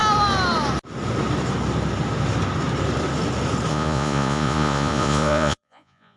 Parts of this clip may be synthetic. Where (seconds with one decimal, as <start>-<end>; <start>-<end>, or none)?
3.7-6.2

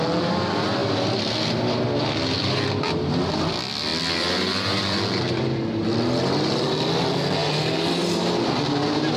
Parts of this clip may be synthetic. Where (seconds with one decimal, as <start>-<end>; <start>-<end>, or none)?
none

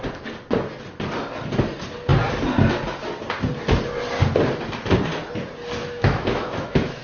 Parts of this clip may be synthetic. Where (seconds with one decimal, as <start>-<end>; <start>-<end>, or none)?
5.8-7.0